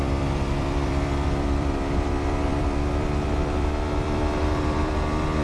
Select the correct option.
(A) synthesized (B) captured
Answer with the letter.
A